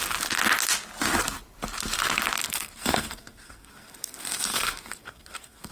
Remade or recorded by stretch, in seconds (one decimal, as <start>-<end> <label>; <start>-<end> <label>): 0.0-2.4 recorded; 2.4-5.7 remade